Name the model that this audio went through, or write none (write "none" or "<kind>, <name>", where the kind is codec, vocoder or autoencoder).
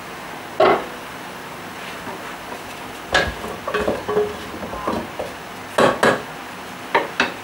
none